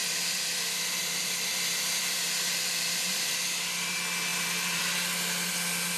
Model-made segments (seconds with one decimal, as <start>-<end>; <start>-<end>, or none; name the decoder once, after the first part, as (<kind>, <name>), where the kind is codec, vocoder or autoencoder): 0.0-3.3 (vocoder, BigVGAN v2); 4.3-4.8